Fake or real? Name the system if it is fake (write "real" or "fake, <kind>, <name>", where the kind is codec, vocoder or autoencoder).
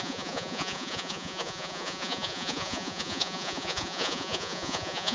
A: fake, vocoder, Vocos